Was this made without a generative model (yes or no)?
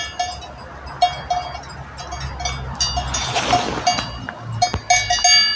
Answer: yes